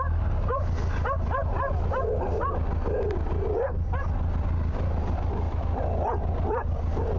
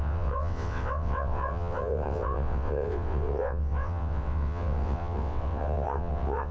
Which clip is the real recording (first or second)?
first